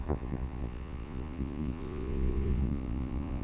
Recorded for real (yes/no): no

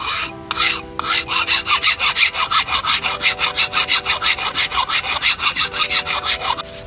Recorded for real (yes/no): yes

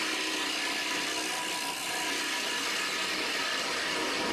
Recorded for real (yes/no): yes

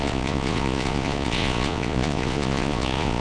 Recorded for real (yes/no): no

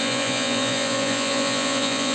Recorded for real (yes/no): no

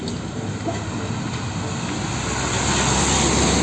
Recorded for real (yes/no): yes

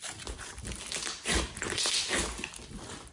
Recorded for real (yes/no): yes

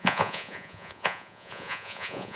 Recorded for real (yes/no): no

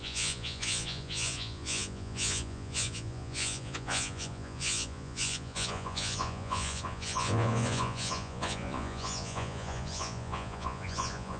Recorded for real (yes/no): no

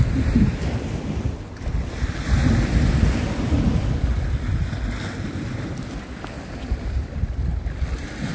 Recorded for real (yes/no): yes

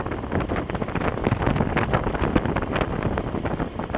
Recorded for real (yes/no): yes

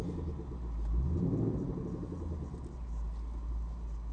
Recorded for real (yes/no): yes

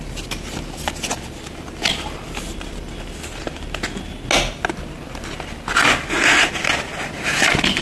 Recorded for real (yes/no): yes